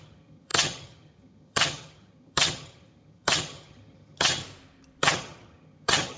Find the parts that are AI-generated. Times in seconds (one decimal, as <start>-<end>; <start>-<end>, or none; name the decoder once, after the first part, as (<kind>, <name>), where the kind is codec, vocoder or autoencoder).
0.0-4.4 (vocoder, HiFi-GAN); 5.0-6.2